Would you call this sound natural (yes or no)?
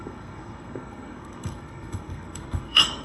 no